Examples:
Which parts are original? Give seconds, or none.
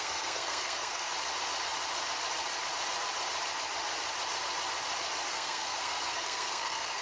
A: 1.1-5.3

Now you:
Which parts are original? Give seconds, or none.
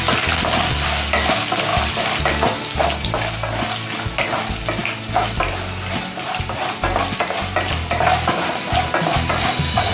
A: 0.0-9.9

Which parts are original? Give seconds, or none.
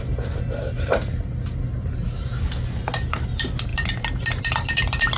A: 0.0-5.2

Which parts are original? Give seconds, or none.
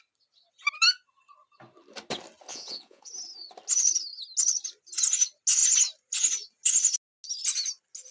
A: 0.0-2.5; 3.1-8.1